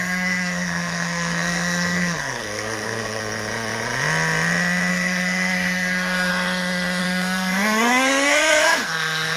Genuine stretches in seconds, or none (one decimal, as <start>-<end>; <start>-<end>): 3.2-4.9; 6.3-7.0